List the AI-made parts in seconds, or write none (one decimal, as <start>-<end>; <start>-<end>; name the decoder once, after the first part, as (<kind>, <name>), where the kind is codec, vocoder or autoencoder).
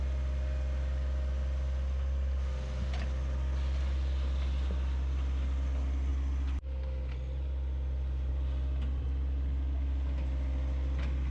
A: none